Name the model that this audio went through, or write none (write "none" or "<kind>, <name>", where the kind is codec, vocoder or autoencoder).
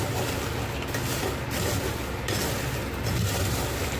none